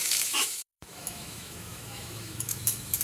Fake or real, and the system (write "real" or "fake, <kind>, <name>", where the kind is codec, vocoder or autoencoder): fake, autoencoder, DAC-VAE